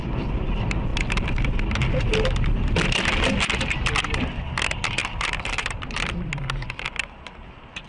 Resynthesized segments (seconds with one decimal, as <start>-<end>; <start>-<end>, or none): 5.0-6.1